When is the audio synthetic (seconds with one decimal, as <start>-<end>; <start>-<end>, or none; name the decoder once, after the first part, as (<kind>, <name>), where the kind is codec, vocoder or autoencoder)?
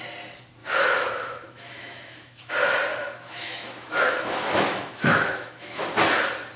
0.6-2.5 (autoencoder, DAC-VAE); 2.9-5.8